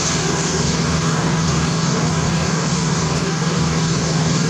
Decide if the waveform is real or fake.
fake